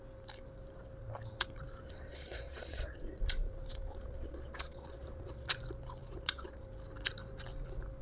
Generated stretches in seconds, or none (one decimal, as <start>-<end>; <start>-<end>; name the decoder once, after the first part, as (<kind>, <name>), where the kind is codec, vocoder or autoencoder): 2.1-3.2 (vocoder, Vocos); 3.9-5.6; 6.0-6.6

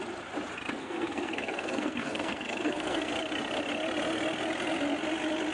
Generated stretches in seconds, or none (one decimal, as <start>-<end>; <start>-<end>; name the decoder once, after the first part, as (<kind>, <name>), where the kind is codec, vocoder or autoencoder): 0.8-3.1 (codec, SNAC)

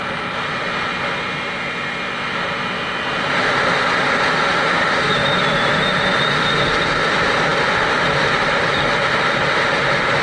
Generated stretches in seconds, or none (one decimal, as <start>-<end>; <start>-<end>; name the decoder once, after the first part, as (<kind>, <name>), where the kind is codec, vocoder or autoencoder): none